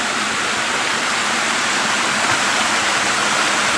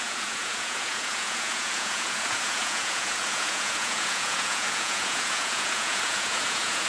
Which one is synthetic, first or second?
second